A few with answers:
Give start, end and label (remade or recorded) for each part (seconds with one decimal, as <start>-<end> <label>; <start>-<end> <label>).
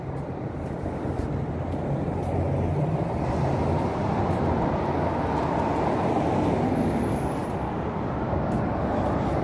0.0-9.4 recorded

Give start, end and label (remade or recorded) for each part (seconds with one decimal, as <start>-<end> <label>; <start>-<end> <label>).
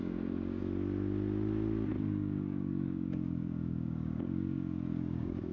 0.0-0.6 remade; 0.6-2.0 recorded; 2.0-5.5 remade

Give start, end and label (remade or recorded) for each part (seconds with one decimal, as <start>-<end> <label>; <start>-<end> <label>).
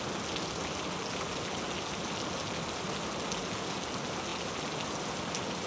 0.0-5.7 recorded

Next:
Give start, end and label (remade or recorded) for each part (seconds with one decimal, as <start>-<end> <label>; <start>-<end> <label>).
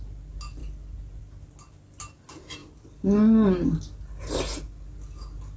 0.0-5.6 recorded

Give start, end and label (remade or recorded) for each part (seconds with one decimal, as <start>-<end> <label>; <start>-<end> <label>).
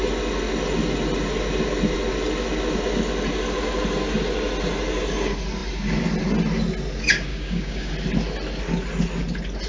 0.0-7.3 recorded; 7.3-7.9 remade; 7.9-9.7 recorded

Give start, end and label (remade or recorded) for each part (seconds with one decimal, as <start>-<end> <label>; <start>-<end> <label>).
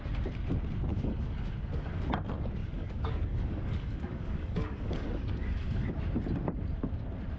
0.0-0.9 recorded; 0.9-2.1 remade; 2.1-2.6 recorded; 2.6-5.9 remade; 5.9-7.4 recorded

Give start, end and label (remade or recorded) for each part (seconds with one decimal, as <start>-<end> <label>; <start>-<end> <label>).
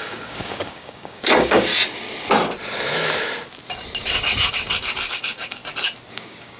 0.0-1.7 remade; 1.7-5.1 recorded; 5.1-5.6 remade; 5.6-6.1 recorded; 6.1-6.6 remade